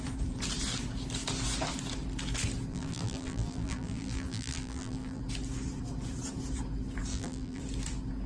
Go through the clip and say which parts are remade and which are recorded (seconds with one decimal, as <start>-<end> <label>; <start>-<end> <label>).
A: 0.0-2.7 recorded; 2.7-5.2 remade; 5.2-7.1 recorded; 7.1-7.6 remade; 7.6-8.3 recorded